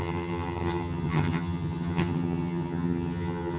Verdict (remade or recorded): remade